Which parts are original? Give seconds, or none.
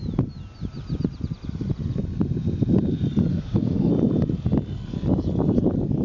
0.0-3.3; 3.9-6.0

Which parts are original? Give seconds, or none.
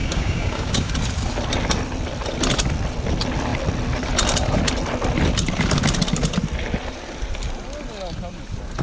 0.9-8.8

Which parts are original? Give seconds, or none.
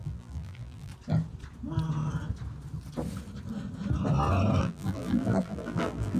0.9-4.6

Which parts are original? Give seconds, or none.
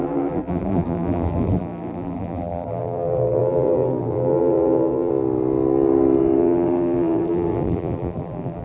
5.1-6.4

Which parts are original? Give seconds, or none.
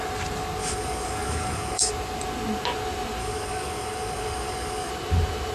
0.0-0.6; 1.9-3.2; 4.9-5.5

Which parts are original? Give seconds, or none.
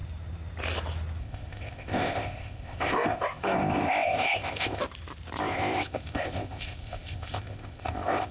0.0-1.2; 4.8-5.4